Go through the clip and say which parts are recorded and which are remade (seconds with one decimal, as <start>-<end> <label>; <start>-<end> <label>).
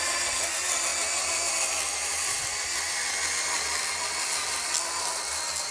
0.0-5.7 recorded